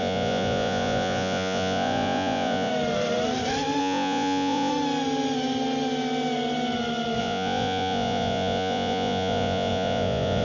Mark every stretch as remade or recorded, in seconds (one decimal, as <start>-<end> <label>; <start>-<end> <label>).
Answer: 0.0-2.7 remade; 2.7-3.8 recorded; 3.8-4.7 remade; 4.7-7.2 recorded; 7.2-10.4 remade